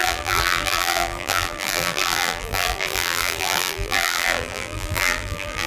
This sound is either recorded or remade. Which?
remade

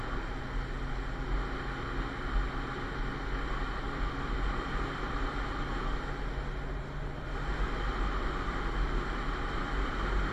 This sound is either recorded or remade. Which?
recorded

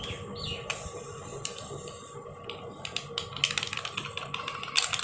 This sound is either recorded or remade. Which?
recorded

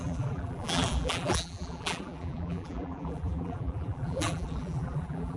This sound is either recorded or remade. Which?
remade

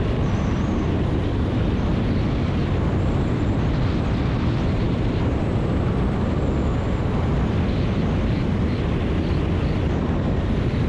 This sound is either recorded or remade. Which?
remade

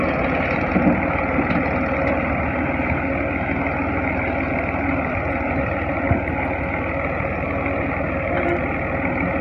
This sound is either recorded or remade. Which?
recorded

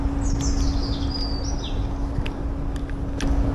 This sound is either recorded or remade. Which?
recorded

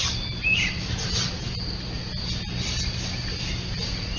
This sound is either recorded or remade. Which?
recorded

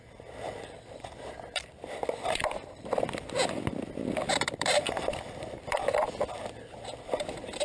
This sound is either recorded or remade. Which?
remade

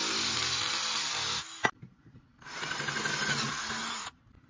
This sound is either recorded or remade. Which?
recorded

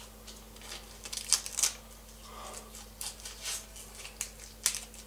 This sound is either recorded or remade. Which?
recorded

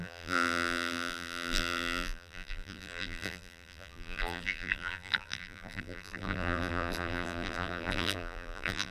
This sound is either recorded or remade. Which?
remade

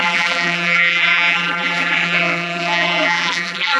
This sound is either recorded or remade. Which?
remade